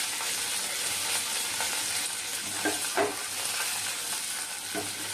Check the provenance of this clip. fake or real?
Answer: real